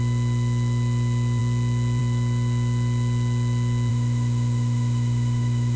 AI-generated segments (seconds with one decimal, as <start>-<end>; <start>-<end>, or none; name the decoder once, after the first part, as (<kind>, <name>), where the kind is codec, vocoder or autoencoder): 3.9-5.8 (autoencoder, DAC-VAE)